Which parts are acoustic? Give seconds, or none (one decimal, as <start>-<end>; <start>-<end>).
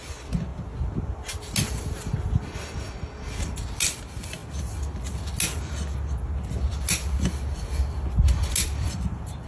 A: 0.0-9.5